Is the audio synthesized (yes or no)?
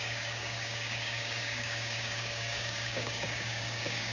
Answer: yes